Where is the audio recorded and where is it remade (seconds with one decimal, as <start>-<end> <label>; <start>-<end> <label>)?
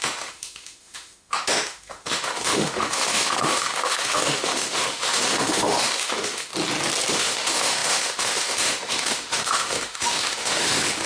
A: 0.0-6.5 remade; 6.5-7.1 recorded; 7.1-11.1 remade